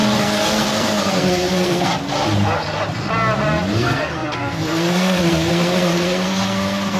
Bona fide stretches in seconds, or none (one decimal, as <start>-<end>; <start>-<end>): 1.9-3.7